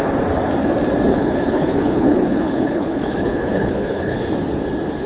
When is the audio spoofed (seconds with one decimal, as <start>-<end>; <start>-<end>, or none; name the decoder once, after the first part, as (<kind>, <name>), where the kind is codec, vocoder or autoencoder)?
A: 1.1-4.2 (codec, HILCodec)

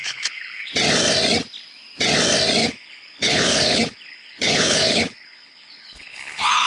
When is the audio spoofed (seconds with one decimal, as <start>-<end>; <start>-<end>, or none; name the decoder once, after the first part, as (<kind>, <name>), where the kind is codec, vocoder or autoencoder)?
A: 0.0-0.7 (codec, HILCodec); 2.6-6.7

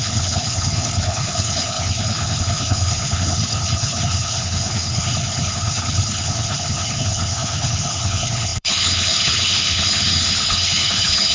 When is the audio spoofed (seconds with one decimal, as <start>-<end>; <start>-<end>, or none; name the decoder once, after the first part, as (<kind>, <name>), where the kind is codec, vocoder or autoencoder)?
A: 0.0-11.3 (codec, HILCodec)

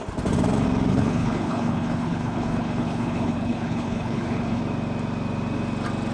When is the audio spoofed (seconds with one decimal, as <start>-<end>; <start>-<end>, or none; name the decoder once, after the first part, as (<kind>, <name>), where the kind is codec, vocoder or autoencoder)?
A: 0.9-4.6 (codec, HILCodec)

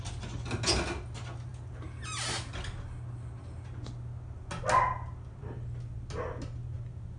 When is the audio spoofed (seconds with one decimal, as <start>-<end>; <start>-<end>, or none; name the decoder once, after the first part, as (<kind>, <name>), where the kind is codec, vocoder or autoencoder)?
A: none

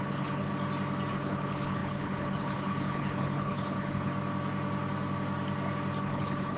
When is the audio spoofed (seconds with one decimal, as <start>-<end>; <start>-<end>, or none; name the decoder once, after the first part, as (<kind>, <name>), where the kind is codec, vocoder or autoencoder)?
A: 0.0-0.5 (codec, HILCodec); 1.1-4.1; 6.0-6.6

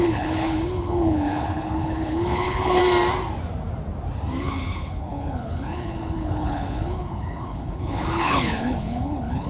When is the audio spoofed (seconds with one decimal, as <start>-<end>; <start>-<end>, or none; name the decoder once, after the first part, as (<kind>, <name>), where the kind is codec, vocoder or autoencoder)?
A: 0.0-2.8 (codec, HILCodec); 4.4-9.5